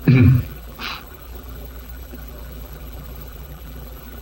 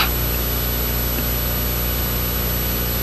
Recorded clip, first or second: second